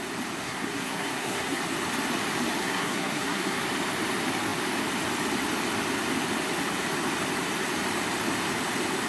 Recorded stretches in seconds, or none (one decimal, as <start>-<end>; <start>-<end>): 0.0-0.4; 1.6-2.6; 3.6-9.1